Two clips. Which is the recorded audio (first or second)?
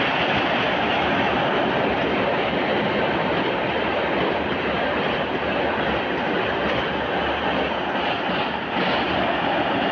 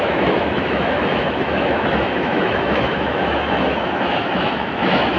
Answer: first